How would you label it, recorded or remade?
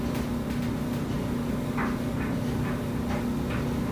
recorded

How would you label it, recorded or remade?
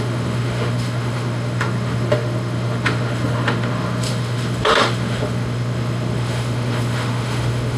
remade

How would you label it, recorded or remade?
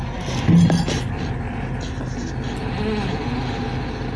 recorded